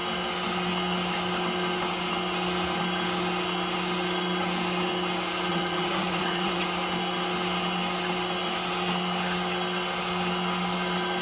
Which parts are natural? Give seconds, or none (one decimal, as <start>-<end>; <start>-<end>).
0.0-5.5; 6.6-11.2